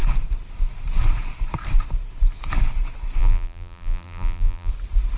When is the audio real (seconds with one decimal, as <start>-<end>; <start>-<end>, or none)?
0.0-3.2; 4.7-5.2